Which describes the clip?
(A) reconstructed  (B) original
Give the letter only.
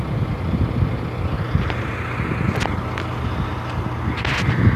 B